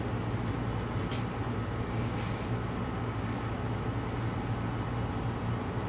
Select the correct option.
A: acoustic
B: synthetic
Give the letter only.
A